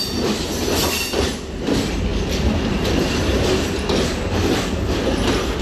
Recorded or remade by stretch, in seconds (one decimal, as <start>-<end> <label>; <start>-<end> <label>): 0.0-5.6 recorded